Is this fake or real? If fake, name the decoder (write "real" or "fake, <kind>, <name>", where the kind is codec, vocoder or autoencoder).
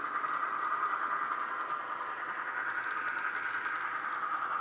real